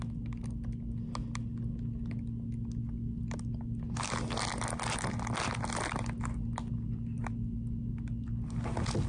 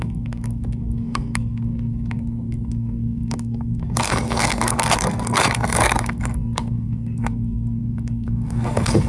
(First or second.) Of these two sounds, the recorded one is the first